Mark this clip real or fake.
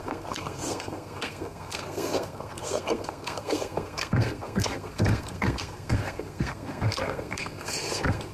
fake